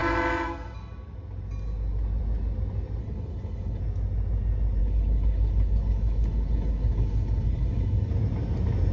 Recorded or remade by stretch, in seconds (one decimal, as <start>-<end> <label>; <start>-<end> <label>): 0.0-3.0 recorded; 3.0-3.8 remade; 3.8-4.8 recorded; 4.8-8.1 remade; 8.1-8.9 recorded